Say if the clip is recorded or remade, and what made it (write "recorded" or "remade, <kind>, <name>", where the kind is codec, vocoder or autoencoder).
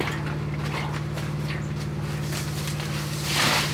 recorded